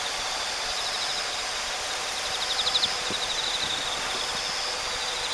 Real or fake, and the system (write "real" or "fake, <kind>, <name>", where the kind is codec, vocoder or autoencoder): real